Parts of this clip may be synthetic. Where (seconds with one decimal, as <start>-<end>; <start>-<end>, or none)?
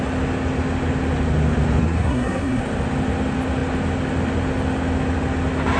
1.8-2.6